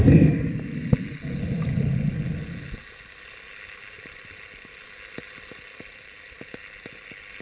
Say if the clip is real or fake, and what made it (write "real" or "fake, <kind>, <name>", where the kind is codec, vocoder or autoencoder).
real